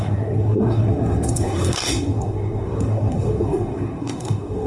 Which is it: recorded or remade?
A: remade